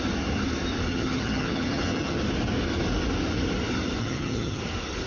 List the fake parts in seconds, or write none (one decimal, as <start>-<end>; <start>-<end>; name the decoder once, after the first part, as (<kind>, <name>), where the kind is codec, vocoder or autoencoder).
0.9-2.2 (vocoder, HiFi-GAN); 4.0-4.6